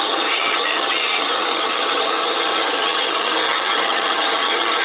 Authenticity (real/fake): fake